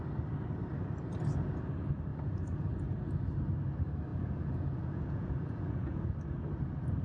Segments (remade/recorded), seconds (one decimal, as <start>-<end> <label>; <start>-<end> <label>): 0.0-2.1 recorded; 2.1-2.8 remade; 2.8-4.1 recorded; 4.1-6.1 remade; 6.1-7.0 recorded